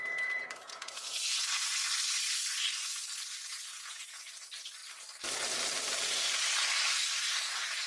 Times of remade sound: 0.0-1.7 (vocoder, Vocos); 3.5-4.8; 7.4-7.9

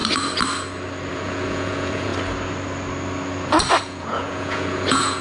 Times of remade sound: 1.1-2.1 (vocoder, Vocos); 3.8-5.2

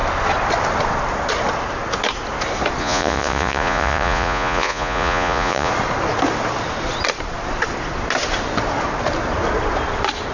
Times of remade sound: 2.8-5.7 (vocoder, Vocos)

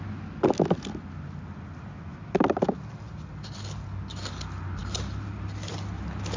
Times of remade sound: none